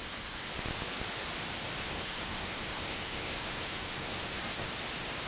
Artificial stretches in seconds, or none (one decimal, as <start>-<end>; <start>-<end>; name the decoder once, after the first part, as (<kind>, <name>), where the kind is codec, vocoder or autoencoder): 0.0-0.5 (codec, SNAC); 1.8-4.7